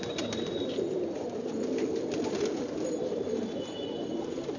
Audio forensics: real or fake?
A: real